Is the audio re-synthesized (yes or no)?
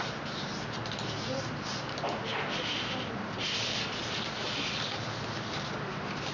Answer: no